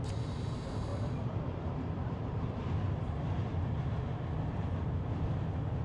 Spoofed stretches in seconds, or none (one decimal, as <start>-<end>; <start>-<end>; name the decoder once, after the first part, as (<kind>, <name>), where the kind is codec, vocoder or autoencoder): 0.9-4.0 (vocoder, BigVGAN v2)